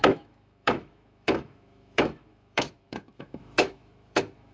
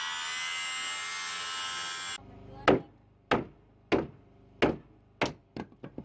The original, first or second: second